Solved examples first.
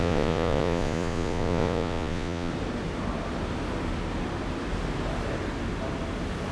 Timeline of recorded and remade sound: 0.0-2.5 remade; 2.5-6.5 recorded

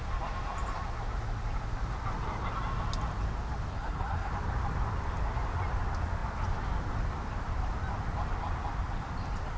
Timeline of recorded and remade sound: 0.0-3.7 recorded; 3.7-4.3 remade; 4.3-9.6 recorded

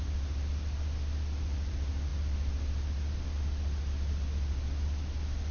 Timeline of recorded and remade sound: 0.0-5.5 recorded

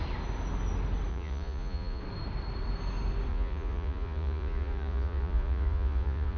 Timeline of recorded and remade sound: 0.0-1.1 recorded; 1.1-2.0 remade; 2.0-3.3 recorded; 3.3-6.4 remade

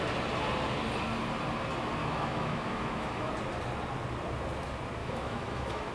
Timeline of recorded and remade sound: 0.0-2.0 recorded; 2.0-3.3 remade; 3.3-5.0 recorded; 5.0-5.9 remade

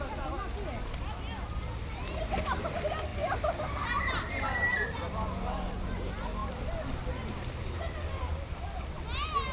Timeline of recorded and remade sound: 0.0-9.5 recorded